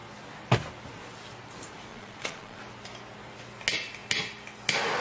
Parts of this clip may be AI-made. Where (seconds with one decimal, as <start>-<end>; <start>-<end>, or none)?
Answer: 1.9-2.6